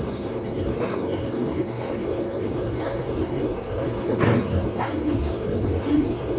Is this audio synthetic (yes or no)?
yes